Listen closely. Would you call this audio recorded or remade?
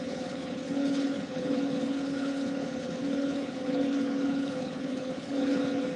remade